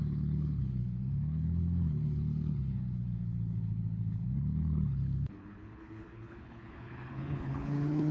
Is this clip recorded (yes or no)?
no